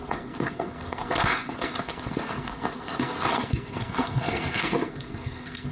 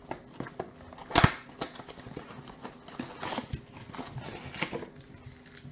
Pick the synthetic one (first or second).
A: first